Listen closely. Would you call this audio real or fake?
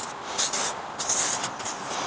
real